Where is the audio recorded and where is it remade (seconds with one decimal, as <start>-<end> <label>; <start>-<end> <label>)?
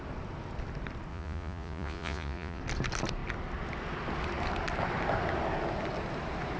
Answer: 0.0-1.1 recorded; 1.1-2.6 remade; 2.6-6.6 recorded